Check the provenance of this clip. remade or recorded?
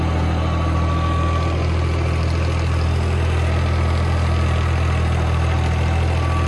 recorded